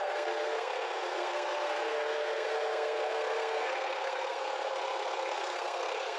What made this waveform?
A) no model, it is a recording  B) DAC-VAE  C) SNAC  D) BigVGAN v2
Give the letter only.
C